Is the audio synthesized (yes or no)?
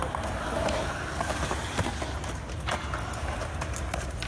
no